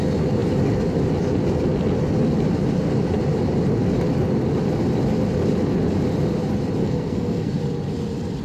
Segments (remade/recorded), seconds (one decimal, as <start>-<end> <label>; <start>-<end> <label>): 0.0-6.8 recorded; 6.8-7.6 remade; 7.6-8.4 recorded